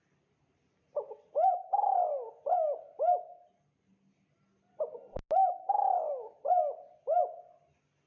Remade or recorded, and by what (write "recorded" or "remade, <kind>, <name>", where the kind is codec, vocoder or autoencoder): recorded